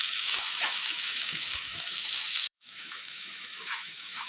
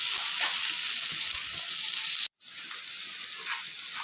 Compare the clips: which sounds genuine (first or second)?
second